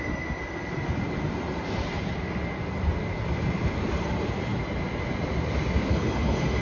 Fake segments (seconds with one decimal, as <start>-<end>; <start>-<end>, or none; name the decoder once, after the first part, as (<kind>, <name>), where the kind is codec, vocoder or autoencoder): 5.9-6.6 (codec, HILCodec)